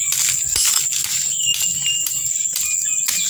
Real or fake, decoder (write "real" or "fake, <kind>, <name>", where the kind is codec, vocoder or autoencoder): real